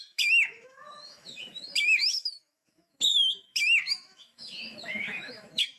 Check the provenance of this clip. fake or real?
fake